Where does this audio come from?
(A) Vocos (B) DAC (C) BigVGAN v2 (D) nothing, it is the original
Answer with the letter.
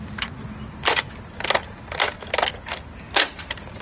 D